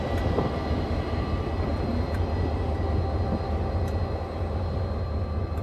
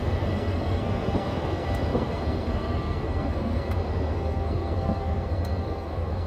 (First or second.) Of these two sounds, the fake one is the second